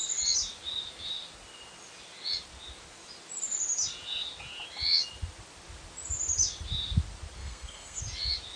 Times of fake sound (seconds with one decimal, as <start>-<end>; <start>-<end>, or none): 7.4-8.0